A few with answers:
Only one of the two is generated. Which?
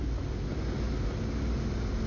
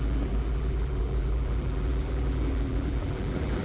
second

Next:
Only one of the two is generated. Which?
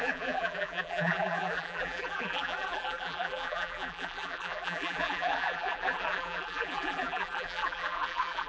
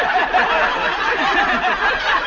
first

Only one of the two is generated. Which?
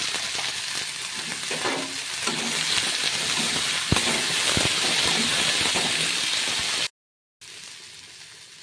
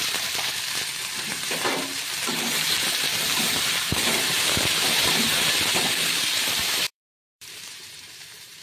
second